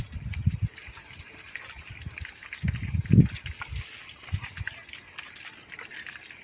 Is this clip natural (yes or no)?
yes